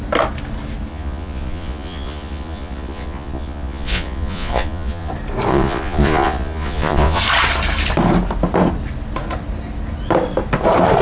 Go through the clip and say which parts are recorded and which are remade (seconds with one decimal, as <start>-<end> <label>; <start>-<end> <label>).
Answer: 0.0-0.9 recorded; 0.9-5.1 remade; 5.1-5.5 recorded; 5.5-7.2 remade; 7.2-11.0 recorded